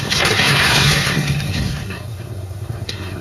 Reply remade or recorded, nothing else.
remade